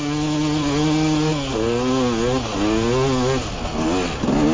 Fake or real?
real